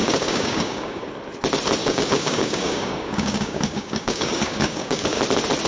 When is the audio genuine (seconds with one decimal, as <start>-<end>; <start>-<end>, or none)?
1.0-1.8; 5.2-5.7